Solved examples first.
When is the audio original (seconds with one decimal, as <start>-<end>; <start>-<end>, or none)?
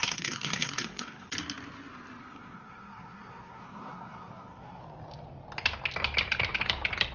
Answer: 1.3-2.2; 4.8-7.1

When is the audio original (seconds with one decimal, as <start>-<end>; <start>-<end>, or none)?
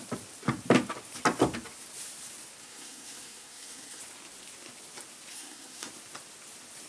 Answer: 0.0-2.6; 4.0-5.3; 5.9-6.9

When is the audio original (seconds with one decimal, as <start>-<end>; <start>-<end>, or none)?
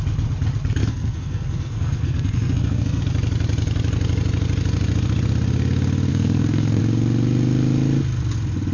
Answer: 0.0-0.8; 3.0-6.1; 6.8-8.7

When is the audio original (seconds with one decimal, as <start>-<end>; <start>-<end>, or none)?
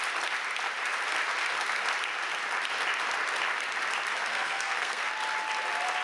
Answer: 0.0-4.3; 5.1-6.0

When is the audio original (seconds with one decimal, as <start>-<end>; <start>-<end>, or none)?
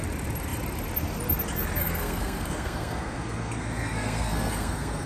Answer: 0.0-1.8